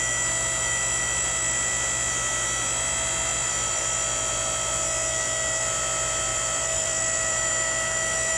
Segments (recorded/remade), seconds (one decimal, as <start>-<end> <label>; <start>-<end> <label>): 0.0-3.3 recorded; 3.3-3.8 remade; 3.8-6.3 recorded; 6.3-7.5 remade; 7.5-8.4 recorded